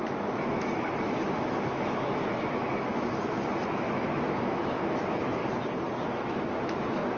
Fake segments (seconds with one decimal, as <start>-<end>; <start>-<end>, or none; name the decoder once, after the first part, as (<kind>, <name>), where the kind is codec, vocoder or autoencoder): 0.0-5.4 (autoencoder, DAC-VAE); 6.0-7.2